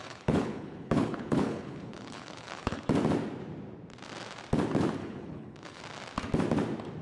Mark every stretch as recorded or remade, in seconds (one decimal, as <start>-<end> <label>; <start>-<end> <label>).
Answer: 0.0-2.8 remade; 2.8-5.0 recorded; 5.0-5.8 remade; 5.8-7.0 recorded